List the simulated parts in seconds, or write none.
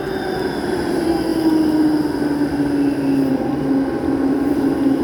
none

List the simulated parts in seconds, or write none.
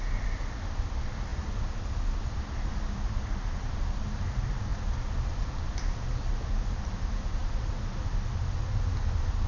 none